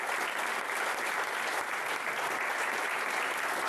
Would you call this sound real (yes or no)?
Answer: yes